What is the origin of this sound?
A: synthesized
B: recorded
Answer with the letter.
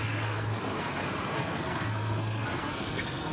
A